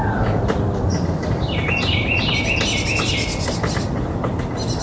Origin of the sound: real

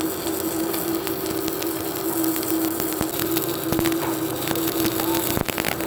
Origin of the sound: real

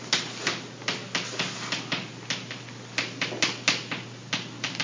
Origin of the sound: real